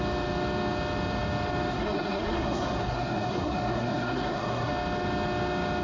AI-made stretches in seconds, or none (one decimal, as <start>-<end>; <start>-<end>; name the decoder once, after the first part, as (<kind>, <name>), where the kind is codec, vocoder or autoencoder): 1.7-4.7 (codec, SNAC)